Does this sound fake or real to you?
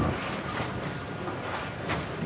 real